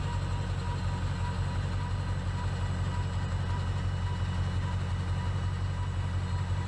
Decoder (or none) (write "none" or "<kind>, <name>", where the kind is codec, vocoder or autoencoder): none